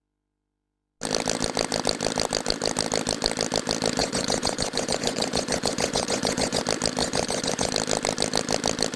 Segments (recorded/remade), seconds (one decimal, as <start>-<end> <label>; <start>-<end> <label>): 0.0-4.0 recorded; 4.0-6.6 remade; 6.6-7.0 recorded; 7.0-7.7 remade; 7.7-9.0 recorded